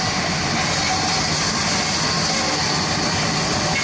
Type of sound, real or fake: real